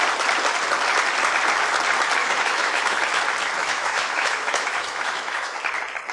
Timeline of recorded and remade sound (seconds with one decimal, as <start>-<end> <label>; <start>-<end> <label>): 0.0-2.2 recorded; 2.2-3.2 remade; 3.2-3.6 recorded; 3.6-5.6 remade; 5.6-6.1 recorded